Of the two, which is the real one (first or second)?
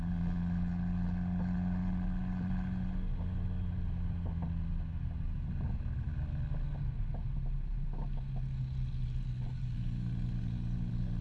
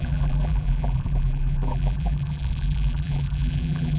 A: first